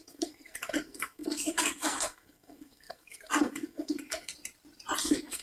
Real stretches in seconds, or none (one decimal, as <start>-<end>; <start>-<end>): 4.3-5.0